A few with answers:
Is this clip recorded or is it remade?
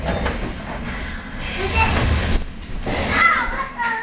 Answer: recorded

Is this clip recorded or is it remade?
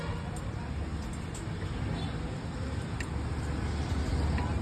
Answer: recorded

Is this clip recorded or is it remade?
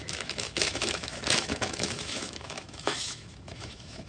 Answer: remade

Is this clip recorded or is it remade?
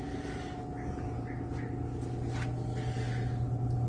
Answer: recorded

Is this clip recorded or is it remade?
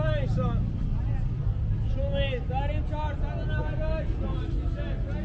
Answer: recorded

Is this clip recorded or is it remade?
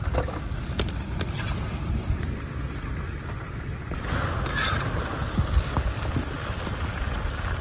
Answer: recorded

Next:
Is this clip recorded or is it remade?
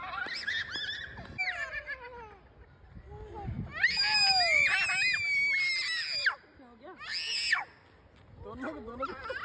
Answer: recorded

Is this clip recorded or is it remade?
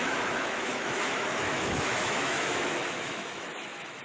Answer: remade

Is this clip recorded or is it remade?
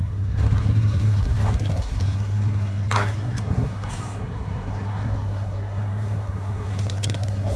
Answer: remade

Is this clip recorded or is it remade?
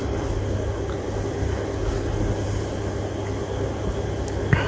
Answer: recorded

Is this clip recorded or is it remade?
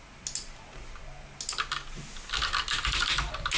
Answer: recorded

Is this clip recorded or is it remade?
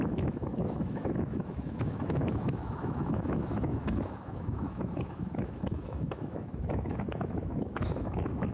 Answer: remade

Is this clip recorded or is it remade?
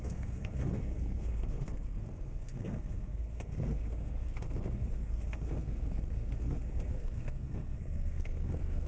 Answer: remade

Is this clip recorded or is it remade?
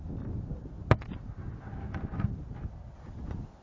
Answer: recorded